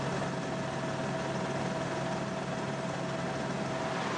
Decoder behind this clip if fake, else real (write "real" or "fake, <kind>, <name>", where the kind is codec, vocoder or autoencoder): real